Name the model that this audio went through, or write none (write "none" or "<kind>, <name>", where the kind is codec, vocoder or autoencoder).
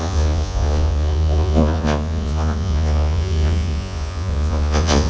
vocoder, Vocos